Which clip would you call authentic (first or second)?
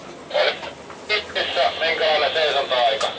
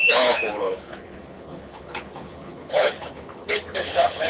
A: first